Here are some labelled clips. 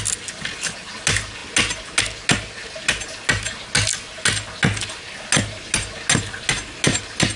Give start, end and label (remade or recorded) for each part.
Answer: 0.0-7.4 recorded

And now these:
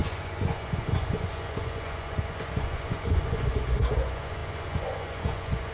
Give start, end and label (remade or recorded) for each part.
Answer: 0.0-5.7 remade

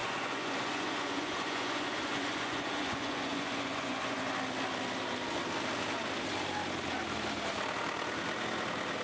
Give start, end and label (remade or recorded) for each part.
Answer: 0.0-4.3 remade; 4.3-9.0 recorded

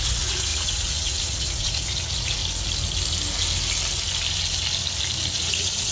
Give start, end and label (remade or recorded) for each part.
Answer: 0.0-2.4 remade; 2.4-5.3 recorded; 5.3-5.9 remade

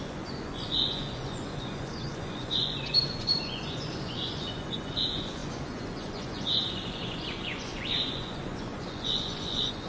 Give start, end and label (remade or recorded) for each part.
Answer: 0.0-9.9 remade

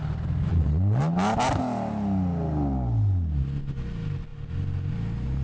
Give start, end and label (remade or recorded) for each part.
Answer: 0.0-0.5 recorded; 0.5-1.0 remade; 1.0-5.4 recorded